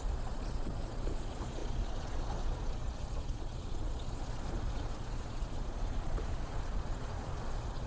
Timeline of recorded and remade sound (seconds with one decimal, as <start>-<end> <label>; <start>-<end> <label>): 0.0-7.9 remade